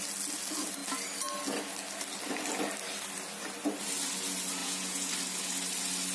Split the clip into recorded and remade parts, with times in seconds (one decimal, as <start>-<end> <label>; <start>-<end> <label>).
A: 0.0-4.6 recorded; 4.6-5.1 remade; 5.1-6.1 recorded